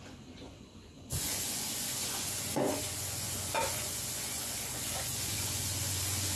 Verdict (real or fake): fake